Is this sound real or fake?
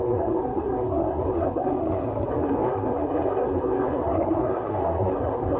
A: fake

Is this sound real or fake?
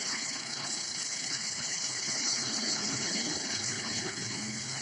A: fake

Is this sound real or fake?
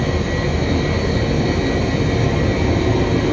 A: real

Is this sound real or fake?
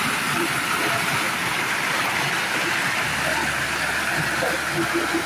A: real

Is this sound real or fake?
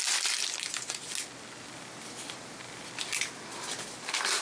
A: real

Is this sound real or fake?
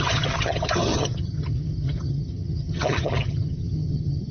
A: fake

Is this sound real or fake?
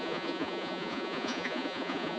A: fake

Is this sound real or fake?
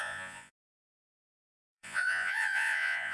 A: fake